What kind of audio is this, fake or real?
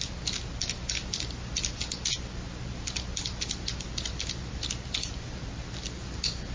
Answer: real